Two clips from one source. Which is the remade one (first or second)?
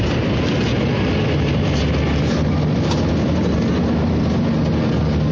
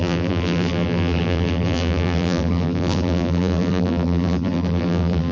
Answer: second